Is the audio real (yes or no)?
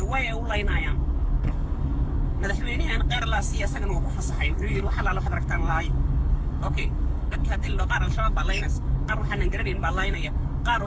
no